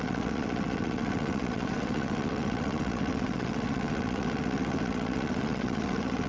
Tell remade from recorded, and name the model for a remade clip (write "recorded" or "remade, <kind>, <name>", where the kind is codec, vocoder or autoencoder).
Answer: remade, vocoder, WaveNeXt